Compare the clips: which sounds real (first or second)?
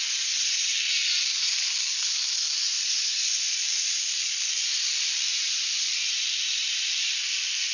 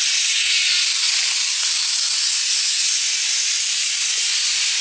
second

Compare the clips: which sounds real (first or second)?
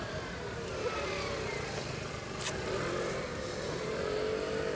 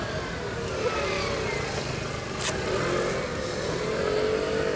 second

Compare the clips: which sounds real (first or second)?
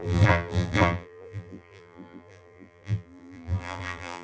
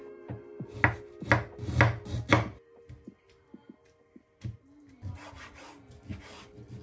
second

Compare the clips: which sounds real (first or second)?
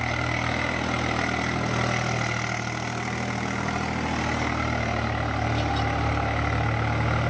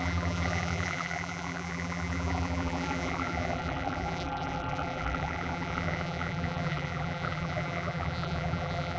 first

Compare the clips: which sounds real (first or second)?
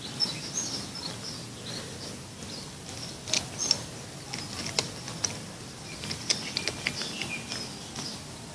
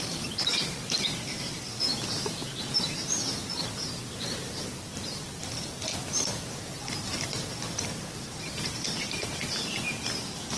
first